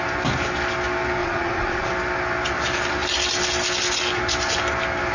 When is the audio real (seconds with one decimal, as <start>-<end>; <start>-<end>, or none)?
0.0-1.2; 1.9-5.1